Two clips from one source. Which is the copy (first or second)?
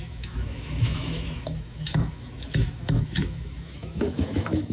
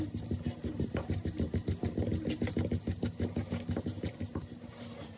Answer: first